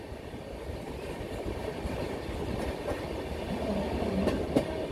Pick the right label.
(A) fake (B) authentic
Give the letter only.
B